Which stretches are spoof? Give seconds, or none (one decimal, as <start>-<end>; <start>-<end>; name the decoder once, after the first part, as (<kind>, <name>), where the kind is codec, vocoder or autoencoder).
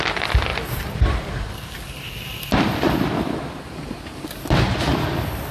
0.5-3.6 (vocoder, BigVGAN v2)